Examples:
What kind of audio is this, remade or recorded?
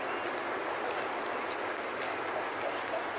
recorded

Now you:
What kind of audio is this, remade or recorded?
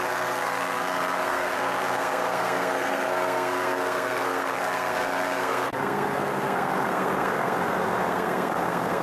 remade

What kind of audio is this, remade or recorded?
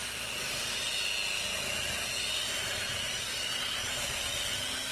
recorded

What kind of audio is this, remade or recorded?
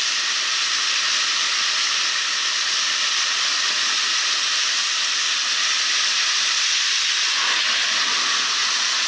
recorded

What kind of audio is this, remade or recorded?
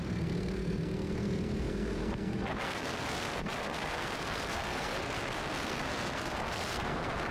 remade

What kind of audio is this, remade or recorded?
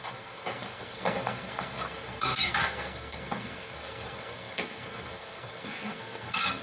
remade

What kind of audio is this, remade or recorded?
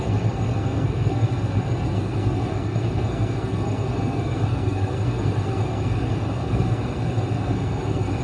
remade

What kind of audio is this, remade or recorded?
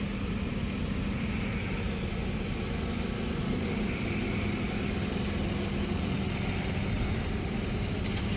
recorded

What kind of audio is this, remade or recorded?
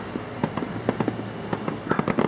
recorded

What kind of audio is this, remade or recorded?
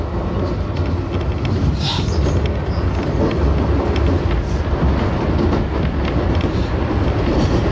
recorded